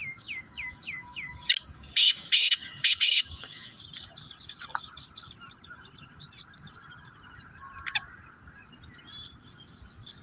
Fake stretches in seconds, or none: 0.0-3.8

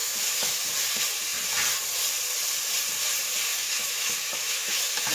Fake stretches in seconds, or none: 0.0-0.6; 3.5-5.1

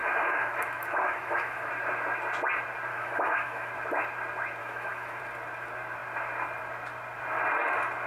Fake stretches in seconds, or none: 0.0-1.7; 2.9-3.7; 4.6-5.2

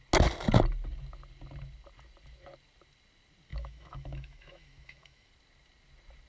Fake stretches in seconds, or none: 3.5-5.3

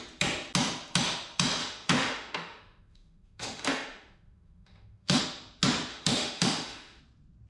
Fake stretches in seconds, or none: 1.6-5.2; 5.9-7.0

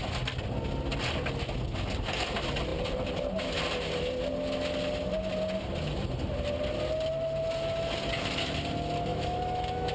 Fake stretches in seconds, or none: 9.1-9.9

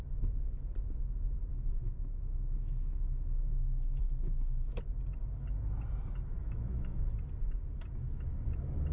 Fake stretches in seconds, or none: 1.5-4.7; 6.4-7.2

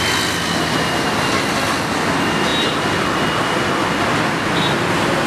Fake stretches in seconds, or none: none